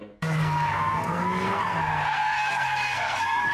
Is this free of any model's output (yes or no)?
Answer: no